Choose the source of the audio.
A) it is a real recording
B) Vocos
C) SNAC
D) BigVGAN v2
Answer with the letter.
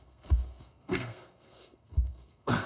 C